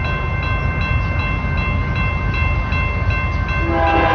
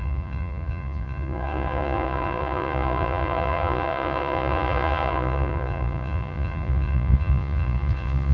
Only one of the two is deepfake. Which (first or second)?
second